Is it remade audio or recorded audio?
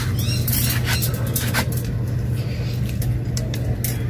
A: recorded